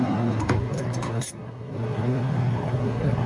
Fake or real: fake